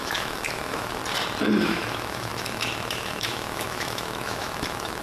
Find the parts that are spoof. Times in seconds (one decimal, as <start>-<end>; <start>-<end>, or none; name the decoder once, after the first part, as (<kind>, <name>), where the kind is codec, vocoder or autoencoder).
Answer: 0.0-1.0 (autoencoder, DAC-VAE); 1.6-5.0